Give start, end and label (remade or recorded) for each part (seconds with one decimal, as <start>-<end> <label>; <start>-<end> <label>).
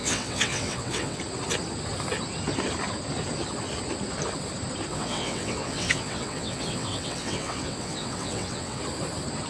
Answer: 0.0-1.2 remade; 1.2-4.9 recorded; 4.9-8.8 remade; 8.8-9.5 recorded